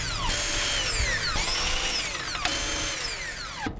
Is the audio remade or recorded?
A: recorded